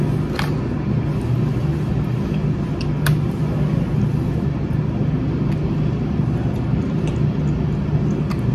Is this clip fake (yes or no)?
no